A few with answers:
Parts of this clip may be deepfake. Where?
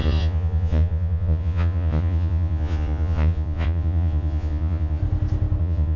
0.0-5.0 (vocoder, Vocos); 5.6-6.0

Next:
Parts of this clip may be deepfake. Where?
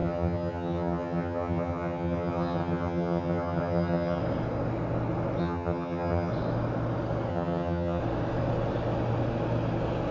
0.0-4.2 (vocoder, HiFi-GAN); 5.4-6.3; 7.3-8.0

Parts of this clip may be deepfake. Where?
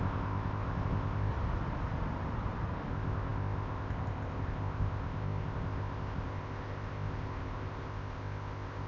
0.0-1.3 (codec, ZipCodec); 2.9-8.9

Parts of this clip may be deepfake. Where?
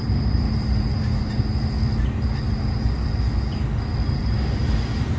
0.0-1.1 (vocoder, BigVGAN v2); 4.2-5.2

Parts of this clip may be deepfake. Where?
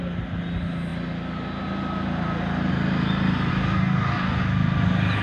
3.5-4.4 (codec, DAC)